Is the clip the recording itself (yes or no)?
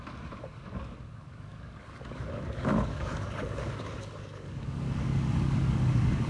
no